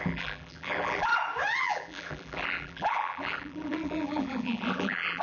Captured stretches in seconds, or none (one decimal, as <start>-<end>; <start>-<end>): 1.1-1.6